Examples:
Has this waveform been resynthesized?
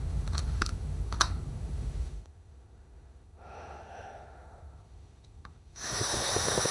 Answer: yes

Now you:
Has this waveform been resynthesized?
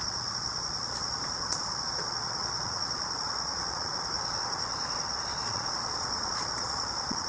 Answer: yes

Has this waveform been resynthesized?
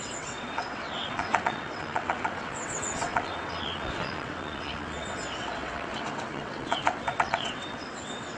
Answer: yes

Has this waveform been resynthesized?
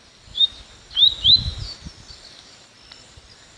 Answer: no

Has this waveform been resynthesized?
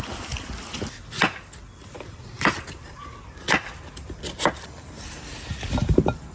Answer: no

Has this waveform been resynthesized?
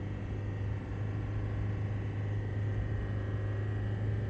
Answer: no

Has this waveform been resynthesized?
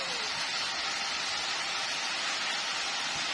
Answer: no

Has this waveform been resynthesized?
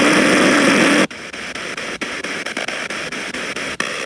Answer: no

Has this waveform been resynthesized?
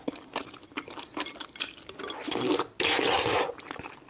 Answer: no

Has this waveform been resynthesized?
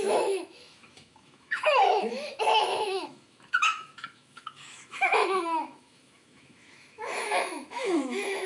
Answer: yes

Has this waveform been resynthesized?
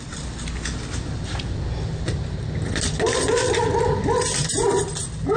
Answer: no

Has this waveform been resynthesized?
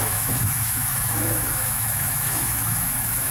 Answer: yes